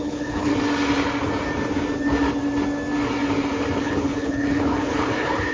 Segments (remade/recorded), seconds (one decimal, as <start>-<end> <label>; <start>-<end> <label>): 0.0-0.5 remade; 0.5-3.8 recorded; 3.8-5.5 remade